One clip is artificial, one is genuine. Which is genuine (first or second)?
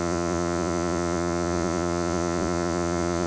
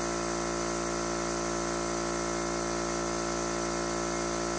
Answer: second